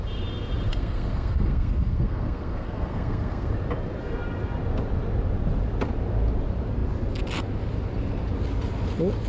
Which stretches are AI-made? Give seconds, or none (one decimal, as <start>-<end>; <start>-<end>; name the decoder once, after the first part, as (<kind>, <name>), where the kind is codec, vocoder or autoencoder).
0.7-3.5 (codec, SNAC)